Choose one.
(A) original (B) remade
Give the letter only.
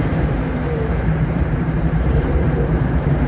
B